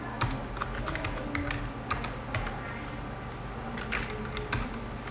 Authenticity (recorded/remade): recorded